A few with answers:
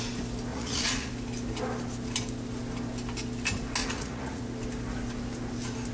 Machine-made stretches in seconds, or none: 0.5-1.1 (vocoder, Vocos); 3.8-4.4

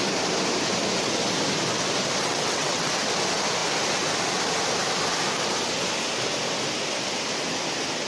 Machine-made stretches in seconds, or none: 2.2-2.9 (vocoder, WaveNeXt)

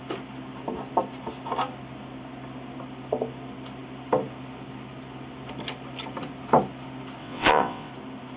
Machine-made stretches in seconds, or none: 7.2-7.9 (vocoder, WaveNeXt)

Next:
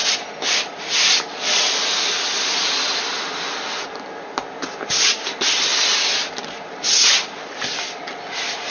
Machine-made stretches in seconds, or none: none

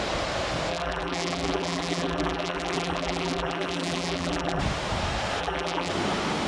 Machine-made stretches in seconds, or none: 0.7-4.6 (vocoder, BigVGAN v2); 5.4-5.9